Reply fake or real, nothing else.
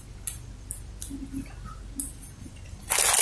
real